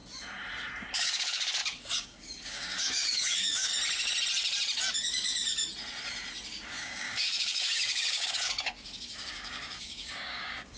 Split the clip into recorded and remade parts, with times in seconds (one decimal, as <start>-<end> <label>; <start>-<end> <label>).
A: 0.0-0.9 recorded; 0.9-3.7 remade; 3.7-6.5 recorded; 6.5-10.8 remade